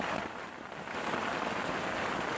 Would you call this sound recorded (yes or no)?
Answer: yes